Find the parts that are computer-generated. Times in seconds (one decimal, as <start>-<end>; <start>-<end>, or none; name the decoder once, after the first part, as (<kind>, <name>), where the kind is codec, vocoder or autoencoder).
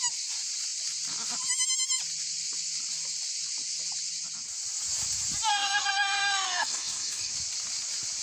5.5-7.3 (codec, DAC)